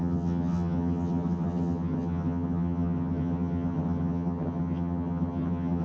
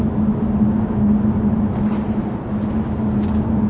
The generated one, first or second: first